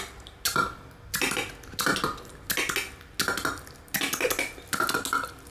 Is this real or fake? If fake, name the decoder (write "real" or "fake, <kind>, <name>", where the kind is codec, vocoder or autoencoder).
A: real